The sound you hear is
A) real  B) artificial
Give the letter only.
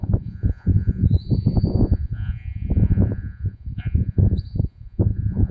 B